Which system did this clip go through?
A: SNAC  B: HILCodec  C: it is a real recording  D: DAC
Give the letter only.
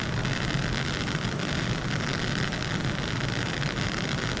C